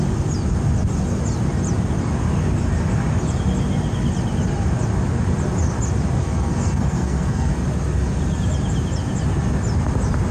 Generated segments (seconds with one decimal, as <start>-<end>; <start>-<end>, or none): 6.2-7.5